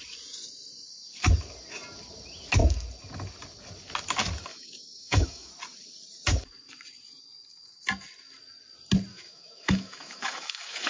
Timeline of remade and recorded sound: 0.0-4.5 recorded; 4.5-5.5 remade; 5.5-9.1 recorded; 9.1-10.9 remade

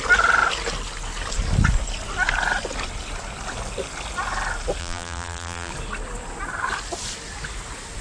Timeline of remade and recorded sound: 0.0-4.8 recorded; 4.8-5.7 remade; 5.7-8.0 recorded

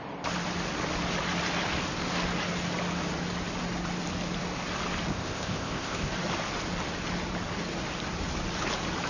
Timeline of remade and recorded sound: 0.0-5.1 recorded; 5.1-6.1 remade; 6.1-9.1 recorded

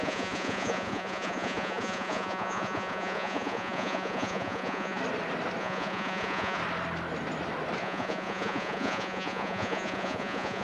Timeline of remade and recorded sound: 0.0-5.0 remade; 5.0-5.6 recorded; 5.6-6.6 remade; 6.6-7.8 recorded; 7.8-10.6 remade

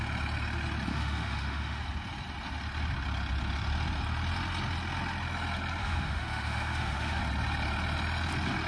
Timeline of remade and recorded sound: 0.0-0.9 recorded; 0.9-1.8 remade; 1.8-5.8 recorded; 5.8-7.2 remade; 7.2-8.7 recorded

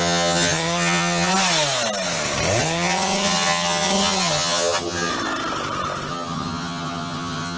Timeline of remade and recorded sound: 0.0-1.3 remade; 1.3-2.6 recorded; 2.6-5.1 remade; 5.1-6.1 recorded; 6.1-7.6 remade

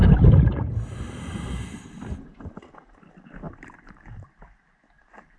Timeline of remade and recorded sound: 0.0-5.4 recorded